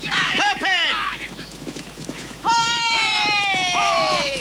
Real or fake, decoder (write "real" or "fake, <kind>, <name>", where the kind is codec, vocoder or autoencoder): fake, autoencoder, DAC-VAE